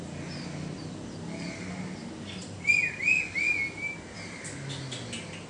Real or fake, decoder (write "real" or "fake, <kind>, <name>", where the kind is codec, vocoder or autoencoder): real